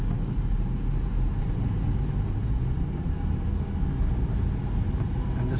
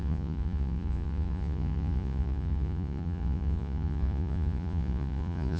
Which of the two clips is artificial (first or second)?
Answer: second